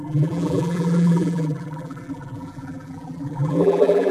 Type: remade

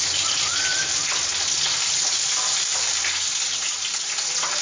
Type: recorded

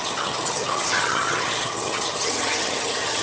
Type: remade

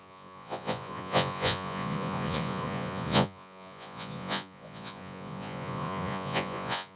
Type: remade